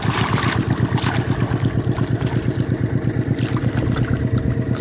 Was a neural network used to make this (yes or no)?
no